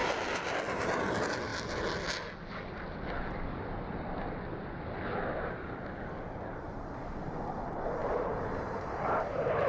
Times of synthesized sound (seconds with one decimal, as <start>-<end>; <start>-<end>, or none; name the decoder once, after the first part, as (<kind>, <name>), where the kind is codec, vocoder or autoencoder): 8.0-9.7 (vocoder, BigVGAN v2)